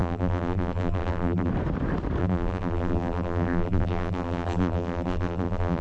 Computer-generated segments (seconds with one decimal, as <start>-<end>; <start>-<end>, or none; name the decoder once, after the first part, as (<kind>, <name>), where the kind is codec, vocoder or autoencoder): 0.0-1.5 (vocoder, BigVGAN v2); 2.2-5.8